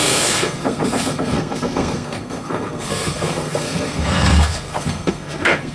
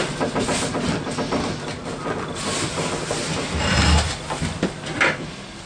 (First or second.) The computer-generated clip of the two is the first